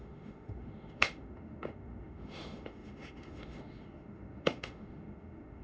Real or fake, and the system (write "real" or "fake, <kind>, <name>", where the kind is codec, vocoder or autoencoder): fake, autoencoder, DAC-VAE